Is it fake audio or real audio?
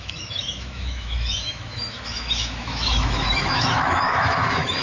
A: fake